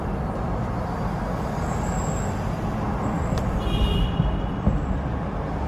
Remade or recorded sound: recorded